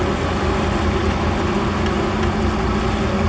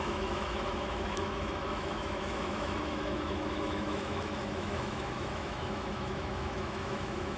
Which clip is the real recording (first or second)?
first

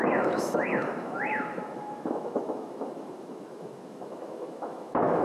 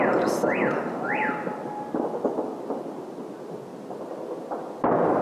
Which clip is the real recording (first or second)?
second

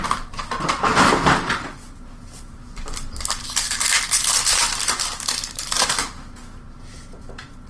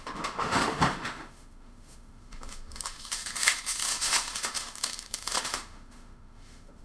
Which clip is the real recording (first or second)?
first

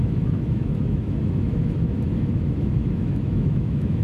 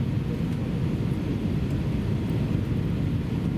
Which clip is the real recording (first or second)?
second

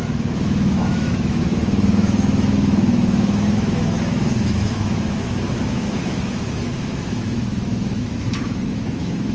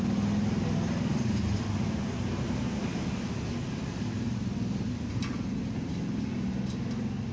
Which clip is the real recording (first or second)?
second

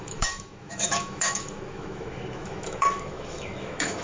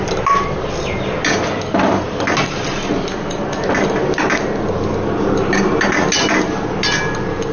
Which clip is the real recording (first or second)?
second